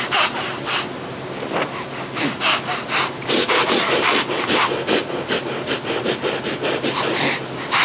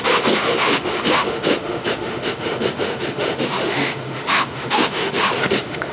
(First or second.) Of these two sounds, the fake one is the second